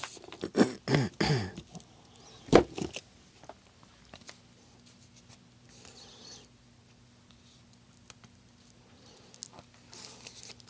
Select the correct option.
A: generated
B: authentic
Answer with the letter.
B